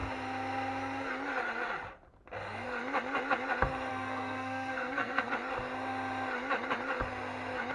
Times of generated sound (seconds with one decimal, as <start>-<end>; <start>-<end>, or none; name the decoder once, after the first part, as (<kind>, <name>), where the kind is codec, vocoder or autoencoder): 3.9-5.3 (codec, SNAC)